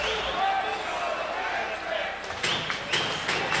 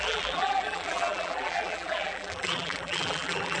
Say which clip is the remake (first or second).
second